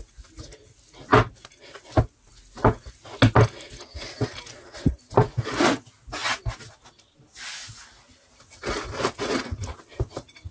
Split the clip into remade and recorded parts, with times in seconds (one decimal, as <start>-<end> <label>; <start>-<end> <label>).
0.0-10.5 recorded